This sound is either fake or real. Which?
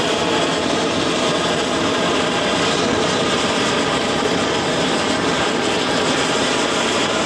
fake